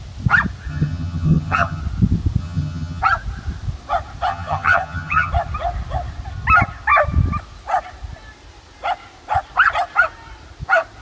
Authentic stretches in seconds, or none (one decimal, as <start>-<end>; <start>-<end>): 0.0-0.7; 1.8-2.4; 3.0-4.3; 5.3-11.0